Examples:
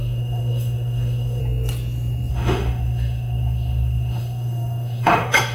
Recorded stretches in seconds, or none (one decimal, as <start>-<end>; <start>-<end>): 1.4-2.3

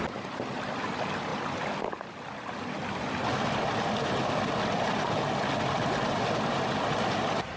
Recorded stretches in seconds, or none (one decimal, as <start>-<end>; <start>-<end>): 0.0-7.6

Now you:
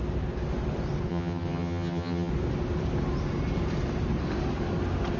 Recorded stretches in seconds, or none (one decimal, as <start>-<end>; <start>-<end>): 0.0-1.1; 2.3-5.2

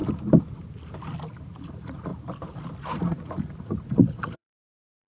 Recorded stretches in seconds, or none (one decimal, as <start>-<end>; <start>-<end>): 0.0-1.7; 2.1-2.8